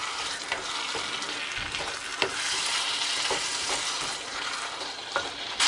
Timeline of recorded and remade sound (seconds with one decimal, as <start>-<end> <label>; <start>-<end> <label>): 0.0-1.0 remade; 1.0-2.1 recorded; 2.1-5.7 remade